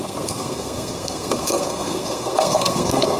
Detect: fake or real fake